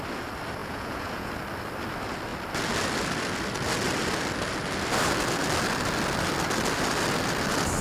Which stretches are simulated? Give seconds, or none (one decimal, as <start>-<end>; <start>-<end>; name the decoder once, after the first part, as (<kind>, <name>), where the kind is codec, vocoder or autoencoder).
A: 0.6-1.3 (vocoder, Vocos)